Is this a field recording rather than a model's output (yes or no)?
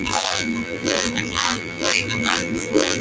no